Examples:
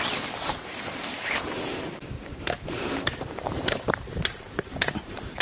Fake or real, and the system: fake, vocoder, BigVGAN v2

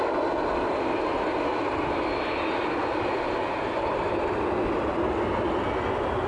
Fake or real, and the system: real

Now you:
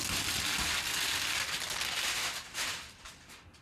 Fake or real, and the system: real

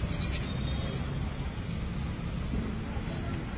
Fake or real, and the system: real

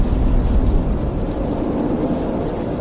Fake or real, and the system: real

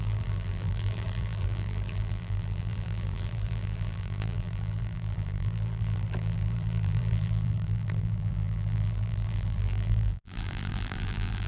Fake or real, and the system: fake, vocoder, BigVGAN v2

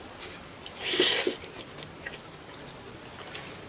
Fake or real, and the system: real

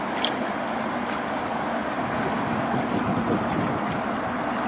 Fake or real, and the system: real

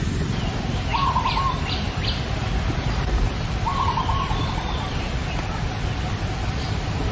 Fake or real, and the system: fake, vocoder, BigVGAN v2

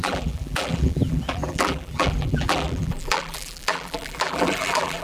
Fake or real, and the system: fake, vocoder, BigVGAN v2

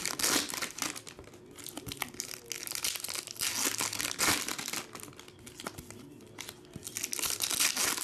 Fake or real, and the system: real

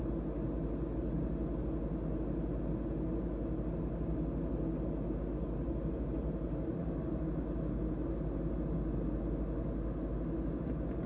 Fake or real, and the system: real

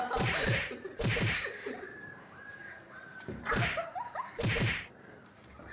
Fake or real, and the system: fake, vocoder, BigVGAN v2